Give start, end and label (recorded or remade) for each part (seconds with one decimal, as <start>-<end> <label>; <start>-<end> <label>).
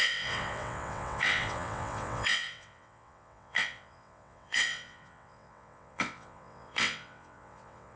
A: 0.0-8.0 remade